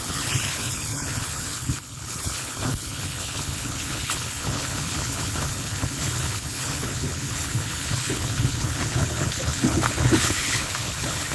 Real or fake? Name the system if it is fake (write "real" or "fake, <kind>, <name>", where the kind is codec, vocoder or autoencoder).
fake, codec, HILCodec